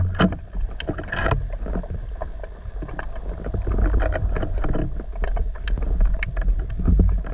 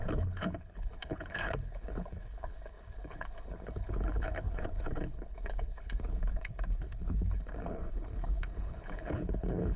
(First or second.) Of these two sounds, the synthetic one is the second